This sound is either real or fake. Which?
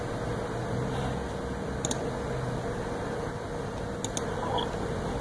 real